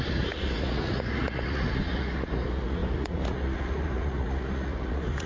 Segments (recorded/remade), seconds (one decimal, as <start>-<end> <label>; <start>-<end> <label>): 0.0-5.3 remade